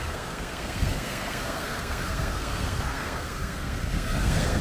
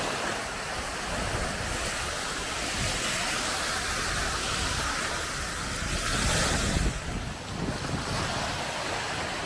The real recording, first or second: second